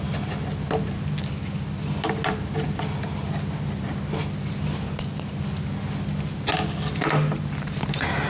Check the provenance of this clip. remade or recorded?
recorded